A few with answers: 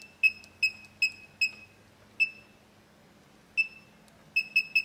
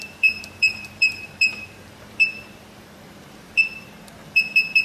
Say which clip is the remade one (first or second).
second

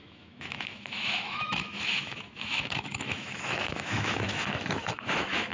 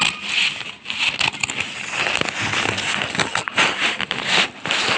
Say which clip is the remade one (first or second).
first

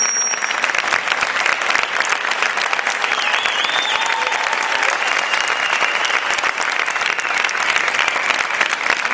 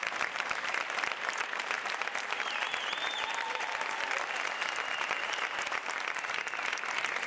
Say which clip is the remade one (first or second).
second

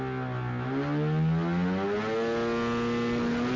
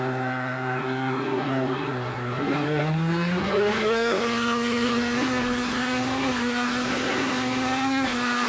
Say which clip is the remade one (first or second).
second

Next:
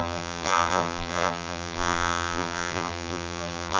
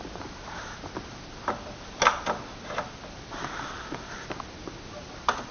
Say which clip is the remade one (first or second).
first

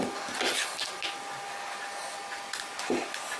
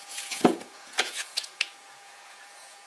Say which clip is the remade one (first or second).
second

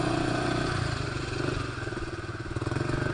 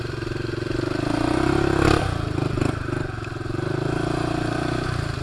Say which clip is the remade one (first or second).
first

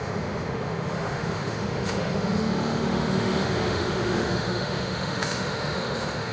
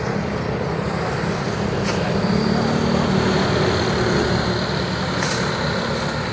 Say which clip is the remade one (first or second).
first